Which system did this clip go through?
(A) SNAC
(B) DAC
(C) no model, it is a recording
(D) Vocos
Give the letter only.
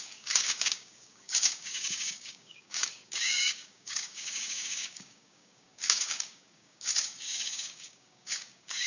B